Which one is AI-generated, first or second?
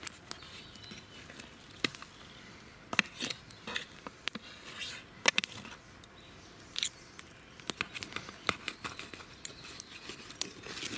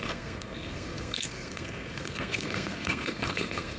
second